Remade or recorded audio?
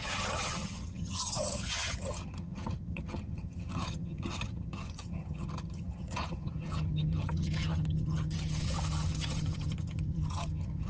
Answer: remade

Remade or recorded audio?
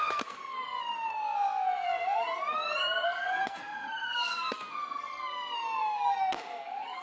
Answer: remade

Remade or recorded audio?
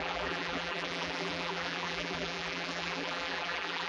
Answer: remade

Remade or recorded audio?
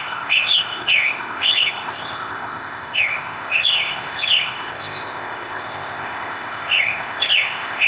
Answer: remade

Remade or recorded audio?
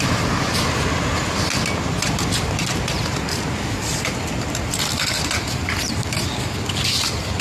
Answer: recorded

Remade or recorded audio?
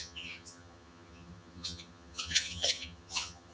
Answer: remade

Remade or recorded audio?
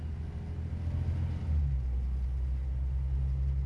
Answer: recorded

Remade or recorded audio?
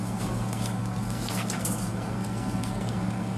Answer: remade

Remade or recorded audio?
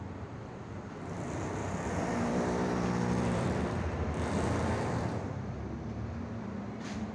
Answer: remade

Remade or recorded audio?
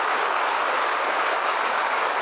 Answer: remade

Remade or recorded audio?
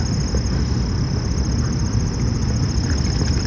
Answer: recorded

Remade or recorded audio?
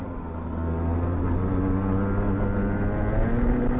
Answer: recorded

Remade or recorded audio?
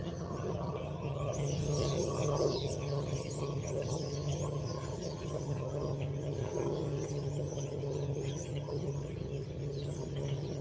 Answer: remade